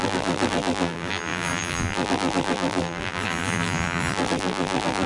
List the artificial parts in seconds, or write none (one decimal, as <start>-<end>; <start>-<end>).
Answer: 0.0-5.1

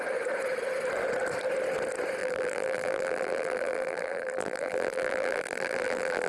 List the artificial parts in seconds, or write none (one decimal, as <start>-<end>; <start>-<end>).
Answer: 2.2-6.3

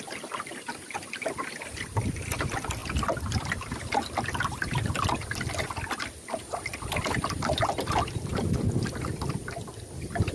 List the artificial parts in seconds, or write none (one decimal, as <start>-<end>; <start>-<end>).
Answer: 0.0-10.3

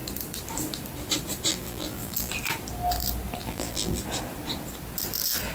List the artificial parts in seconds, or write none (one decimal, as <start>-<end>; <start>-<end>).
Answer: 1.5-2.3; 3.4-4.0

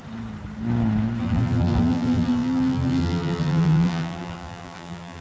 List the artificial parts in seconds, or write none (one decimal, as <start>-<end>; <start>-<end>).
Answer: 1.2-5.2

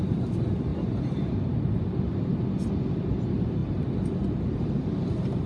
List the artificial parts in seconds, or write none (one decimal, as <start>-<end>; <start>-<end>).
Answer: 0.7-1.5